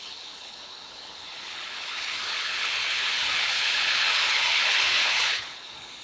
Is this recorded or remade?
remade